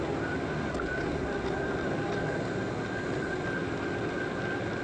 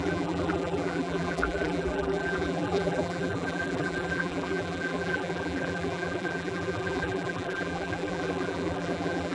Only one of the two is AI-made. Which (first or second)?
second